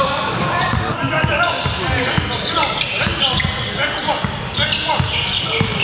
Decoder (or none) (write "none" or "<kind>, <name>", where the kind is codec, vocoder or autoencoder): none